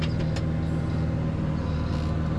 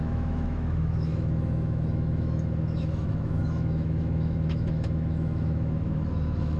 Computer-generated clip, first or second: second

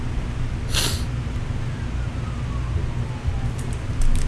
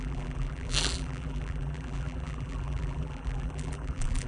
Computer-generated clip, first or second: second